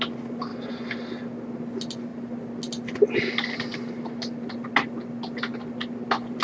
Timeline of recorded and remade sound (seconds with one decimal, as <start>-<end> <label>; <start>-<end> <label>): 0.0-6.4 recorded